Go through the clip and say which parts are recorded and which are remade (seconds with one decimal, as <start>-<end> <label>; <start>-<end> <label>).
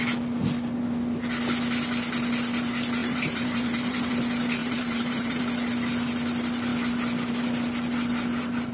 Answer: 0.0-3.0 recorded; 3.0-4.1 remade; 4.1-4.6 recorded; 4.6-5.4 remade; 5.4-8.7 recorded